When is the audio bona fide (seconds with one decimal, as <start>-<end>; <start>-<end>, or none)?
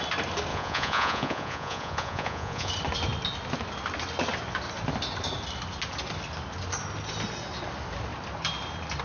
0.0-0.5; 2.7-9.0